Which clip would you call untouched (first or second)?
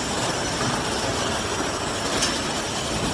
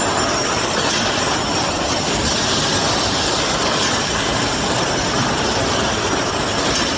first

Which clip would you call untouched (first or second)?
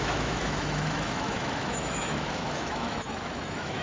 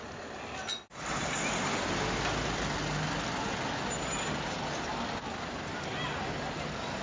second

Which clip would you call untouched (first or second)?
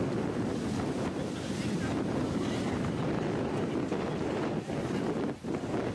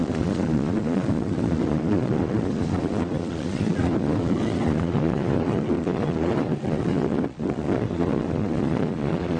first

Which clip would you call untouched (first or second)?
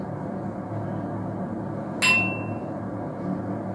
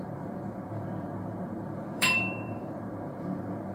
first